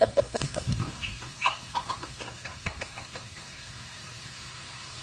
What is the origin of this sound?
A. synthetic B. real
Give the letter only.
A